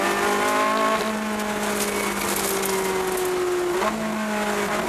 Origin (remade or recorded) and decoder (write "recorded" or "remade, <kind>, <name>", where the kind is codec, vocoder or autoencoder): recorded